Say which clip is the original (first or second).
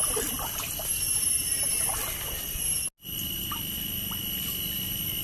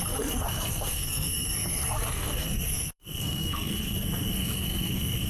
first